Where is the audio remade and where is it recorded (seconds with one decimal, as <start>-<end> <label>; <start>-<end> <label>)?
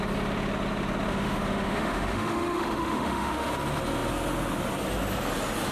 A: 0.0-1.1 recorded; 1.1-3.5 remade; 3.5-5.7 recorded